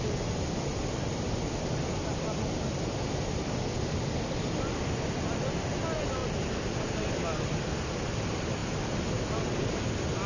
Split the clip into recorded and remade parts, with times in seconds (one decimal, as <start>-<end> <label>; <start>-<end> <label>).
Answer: 0.0-10.3 recorded